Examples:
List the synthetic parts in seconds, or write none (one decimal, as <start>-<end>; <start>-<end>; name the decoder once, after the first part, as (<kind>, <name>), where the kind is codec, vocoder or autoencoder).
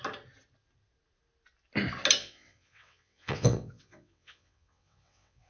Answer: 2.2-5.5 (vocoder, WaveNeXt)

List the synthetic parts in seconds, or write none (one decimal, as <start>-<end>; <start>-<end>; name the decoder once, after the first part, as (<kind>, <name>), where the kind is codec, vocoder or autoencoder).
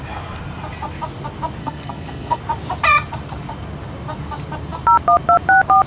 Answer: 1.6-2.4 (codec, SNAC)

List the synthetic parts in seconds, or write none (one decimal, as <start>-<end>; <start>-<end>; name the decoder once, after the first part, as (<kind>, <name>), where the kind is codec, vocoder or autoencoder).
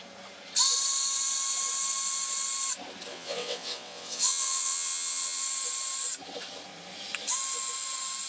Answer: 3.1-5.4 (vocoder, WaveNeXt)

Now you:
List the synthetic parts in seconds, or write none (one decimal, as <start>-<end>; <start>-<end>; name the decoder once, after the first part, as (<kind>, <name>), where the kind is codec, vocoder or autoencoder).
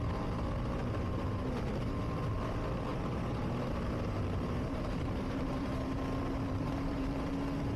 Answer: 0.8-1.4 (vocoder, BigVGAN v2); 2.9-7.3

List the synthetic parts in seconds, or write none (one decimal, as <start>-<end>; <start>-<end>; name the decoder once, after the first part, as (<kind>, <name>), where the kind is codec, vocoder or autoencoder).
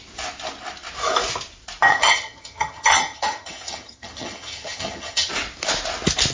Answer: 1.9-5.3 (vocoder, HiFi-GAN)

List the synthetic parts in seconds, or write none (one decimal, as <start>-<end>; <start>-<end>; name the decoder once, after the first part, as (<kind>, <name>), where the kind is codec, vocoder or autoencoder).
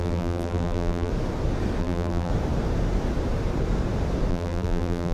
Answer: 0.0-1.1 (vocoder, BigVGAN v2); 1.8-2.3; 4.3-5.1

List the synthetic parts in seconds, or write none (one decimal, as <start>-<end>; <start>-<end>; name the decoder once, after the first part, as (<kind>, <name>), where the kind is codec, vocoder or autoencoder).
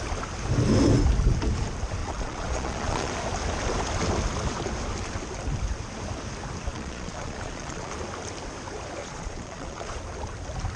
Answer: 2.0-3.1 (vocoder, Vocos); 6.7-7.9; 9.0-10.0